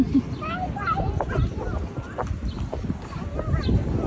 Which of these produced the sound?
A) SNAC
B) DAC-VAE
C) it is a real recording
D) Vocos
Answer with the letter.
C